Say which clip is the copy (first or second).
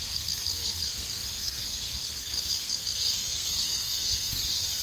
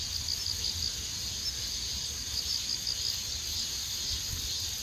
first